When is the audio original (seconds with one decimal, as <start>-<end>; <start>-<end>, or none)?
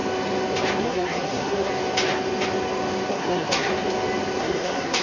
0.0-0.8; 1.7-3.1; 3.7-4.4